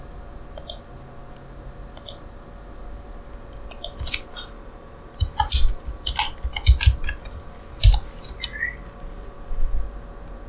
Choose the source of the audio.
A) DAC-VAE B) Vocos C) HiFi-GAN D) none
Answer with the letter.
D